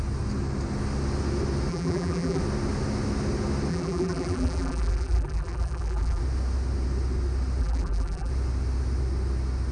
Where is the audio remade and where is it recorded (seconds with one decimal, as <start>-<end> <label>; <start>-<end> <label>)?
0.0-1.7 recorded; 1.7-2.4 remade; 2.4-3.7 recorded; 3.7-6.2 remade; 6.2-7.6 recorded; 7.6-8.3 remade; 8.3-9.7 recorded